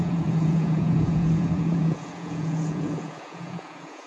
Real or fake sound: fake